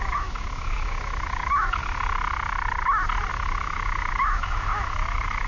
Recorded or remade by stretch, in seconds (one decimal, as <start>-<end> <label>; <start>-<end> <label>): 0.0-1.8 remade; 1.8-3.3 recorded; 3.3-5.5 remade